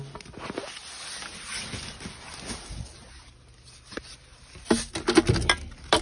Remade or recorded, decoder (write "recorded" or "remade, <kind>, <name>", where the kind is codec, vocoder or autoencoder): recorded